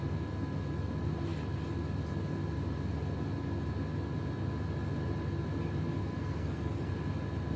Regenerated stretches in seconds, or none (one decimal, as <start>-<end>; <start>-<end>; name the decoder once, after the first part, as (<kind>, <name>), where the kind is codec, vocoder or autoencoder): 6.0-6.9 (codec, SNAC)